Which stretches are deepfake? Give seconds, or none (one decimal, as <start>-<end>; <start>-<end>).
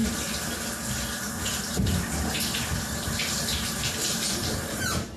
3.1-5.2